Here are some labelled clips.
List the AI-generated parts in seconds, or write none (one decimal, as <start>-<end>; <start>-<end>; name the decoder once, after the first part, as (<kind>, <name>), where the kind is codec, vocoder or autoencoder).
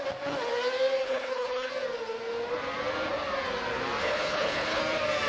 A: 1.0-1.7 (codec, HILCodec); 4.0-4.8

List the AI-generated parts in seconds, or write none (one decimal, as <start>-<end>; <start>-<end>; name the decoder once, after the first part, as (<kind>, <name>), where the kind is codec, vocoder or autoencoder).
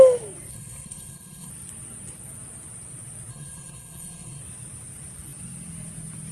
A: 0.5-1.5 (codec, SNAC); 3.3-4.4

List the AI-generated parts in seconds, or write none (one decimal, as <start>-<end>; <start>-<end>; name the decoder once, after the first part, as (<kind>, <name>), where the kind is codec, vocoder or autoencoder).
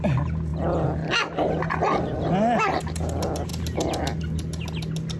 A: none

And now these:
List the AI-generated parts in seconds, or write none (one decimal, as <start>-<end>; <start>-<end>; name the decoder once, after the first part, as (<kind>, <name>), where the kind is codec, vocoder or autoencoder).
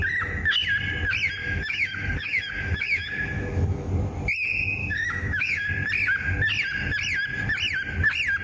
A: 1.4-3.9 (autoencoder, DAC-VAE); 4.8-5.7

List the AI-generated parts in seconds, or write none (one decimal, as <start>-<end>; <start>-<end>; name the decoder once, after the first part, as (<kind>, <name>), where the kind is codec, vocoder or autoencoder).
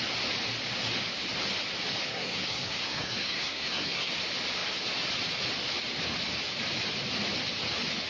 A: 2.1-4.1 (codec, SNAC)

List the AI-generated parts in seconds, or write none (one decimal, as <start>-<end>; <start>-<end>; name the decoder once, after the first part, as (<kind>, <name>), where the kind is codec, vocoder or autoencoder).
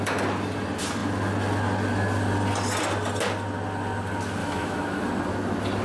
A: 4.4-5.0 (autoencoder, DAC-VAE)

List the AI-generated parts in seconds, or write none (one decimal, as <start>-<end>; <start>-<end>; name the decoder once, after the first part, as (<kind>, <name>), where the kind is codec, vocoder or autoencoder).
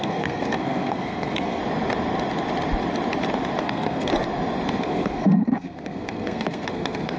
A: 0.0-1.6 (codec, SNAC); 3.6-4.1; 4.8-7.2